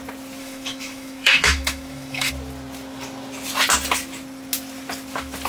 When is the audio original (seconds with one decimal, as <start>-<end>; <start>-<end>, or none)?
0.0-0.4; 2.3-5.5